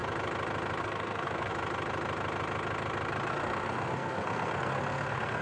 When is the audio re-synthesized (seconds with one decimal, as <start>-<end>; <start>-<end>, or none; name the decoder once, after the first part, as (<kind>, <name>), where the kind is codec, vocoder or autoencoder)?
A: 0.8-1.5 (codec, SNAC); 3.3-5.4

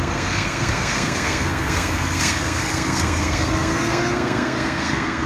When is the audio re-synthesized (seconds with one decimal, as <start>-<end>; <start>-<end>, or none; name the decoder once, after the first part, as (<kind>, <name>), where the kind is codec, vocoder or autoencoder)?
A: 0.0-5.3 (codec, SNAC)

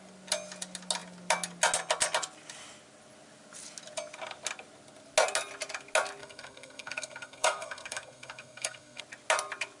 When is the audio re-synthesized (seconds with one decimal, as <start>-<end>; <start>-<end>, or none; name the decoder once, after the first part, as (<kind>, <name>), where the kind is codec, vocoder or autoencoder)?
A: 6.2-9.0 (codec, SNAC)

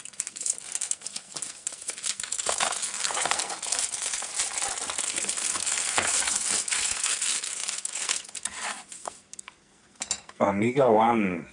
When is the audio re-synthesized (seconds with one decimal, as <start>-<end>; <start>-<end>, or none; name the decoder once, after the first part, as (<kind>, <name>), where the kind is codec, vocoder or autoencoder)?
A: 0.0-4.3 (codec, SNAC); 5.0-11.5

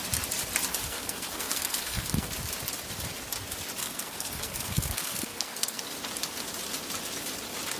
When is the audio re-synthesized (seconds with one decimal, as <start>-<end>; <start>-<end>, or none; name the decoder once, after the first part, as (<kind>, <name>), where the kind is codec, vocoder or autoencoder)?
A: 0.7-2.3 (codec, SNAC); 3.8-5.8

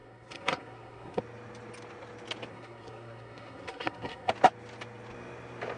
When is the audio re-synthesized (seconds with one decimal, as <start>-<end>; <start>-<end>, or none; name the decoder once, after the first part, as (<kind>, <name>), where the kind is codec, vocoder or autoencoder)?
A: 0.0-1.2 (codec, SNAC); 2.5-4.3